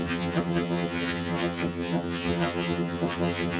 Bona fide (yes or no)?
no